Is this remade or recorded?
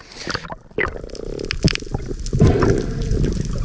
recorded